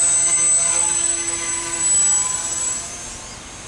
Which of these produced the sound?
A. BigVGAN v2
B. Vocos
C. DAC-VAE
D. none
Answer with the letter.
D